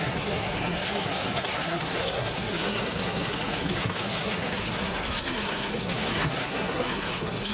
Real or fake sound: fake